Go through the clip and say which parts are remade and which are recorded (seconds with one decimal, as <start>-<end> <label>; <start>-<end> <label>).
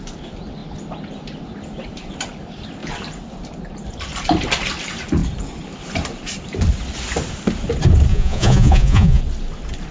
0.0-8.1 recorded; 8.1-9.2 remade; 9.2-9.9 recorded